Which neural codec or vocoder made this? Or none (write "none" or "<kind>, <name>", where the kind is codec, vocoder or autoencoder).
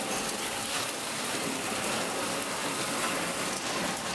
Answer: none